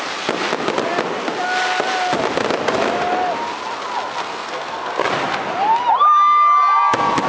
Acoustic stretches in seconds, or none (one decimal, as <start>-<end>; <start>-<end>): 0.0-4.2; 4.9-7.3